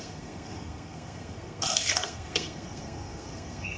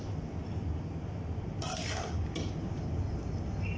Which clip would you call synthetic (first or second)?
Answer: first